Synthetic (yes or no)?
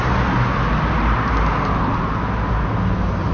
no